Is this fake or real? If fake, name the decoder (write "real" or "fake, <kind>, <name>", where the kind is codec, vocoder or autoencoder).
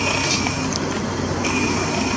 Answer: real